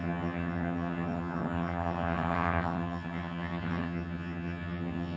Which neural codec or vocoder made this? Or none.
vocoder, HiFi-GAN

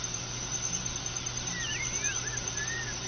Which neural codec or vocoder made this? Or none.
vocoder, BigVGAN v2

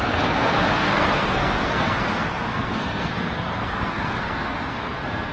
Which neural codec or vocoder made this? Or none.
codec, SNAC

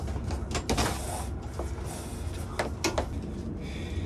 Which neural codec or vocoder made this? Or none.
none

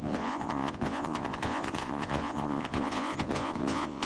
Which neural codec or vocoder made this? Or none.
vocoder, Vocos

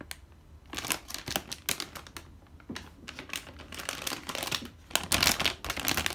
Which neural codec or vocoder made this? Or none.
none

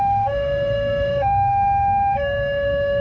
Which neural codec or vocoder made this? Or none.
codec, SNAC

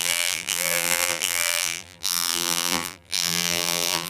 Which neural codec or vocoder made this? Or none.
vocoder, BigVGAN v2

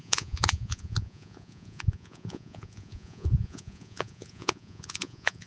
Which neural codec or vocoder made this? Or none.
vocoder, Vocos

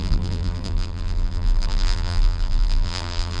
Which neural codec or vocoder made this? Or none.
vocoder, BigVGAN v2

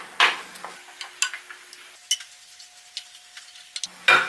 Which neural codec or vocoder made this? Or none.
none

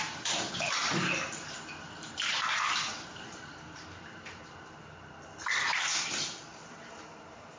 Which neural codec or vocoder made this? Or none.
vocoder, BigVGAN v2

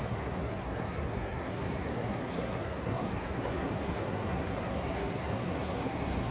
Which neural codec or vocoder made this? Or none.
codec, SNAC